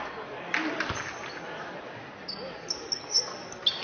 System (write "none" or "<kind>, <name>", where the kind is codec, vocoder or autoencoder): none